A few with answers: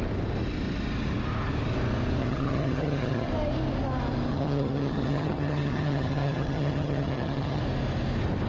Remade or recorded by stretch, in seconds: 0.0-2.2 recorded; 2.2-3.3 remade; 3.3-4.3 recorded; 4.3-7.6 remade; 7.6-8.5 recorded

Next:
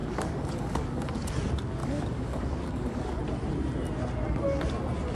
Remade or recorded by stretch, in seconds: 0.0-1.1 remade; 1.1-1.8 recorded; 1.8-3.2 remade; 3.2-5.1 recorded

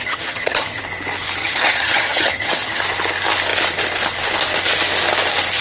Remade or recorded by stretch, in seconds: 0.0-0.8 remade; 0.8-1.4 recorded; 1.4-2.8 remade; 2.8-5.6 recorded

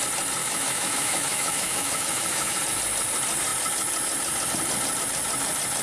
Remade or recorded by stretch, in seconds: 0.0-0.4 recorded; 0.4-2.6 remade; 2.6-5.8 recorded

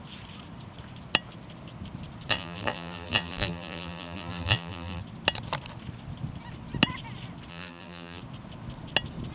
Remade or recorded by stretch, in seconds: 0.0-2.3 recorded; 2.3-5.0 remade; 5.0-7.5 recorded; 7.5-8.2 remade; 8.2-9.3 recorded

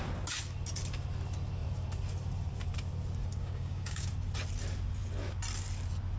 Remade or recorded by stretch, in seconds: 0.0-3.4 recorded; 3.4-4.1 remade; 4.1-6.2 recorded

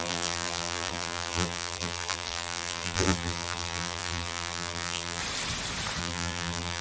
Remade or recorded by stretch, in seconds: 0.0-5.2 remade; 5.2-6.0 recorded; 6.0-6.8 remade

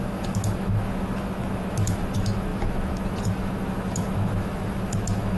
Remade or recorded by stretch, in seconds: 0.0-5.4 remade